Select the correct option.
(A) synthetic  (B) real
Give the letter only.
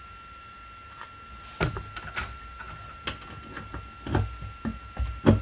B